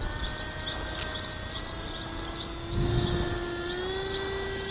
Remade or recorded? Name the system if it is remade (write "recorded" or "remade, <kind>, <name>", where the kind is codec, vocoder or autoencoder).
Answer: recorded